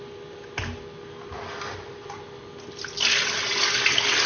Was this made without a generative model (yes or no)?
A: yes